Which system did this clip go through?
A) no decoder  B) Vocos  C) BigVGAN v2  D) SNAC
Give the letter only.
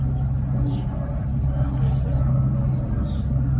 A